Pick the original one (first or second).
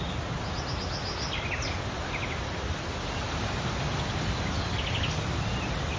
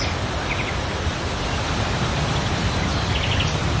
first